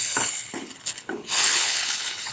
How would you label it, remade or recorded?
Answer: remade